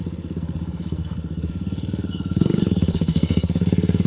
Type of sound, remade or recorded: remade